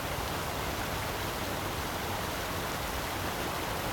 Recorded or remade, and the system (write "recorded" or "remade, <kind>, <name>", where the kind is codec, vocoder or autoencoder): recorded